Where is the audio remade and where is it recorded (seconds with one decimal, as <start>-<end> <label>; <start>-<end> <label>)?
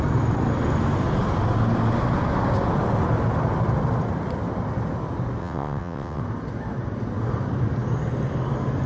0.0-5.4 recorded; 5.4-6.2 remade; 6.2-8.9 recorded